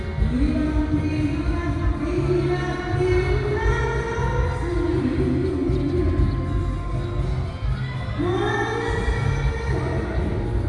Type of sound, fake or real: real